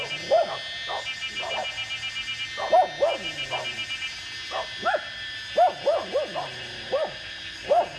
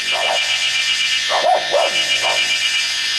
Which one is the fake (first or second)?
second